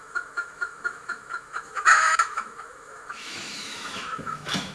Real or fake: fake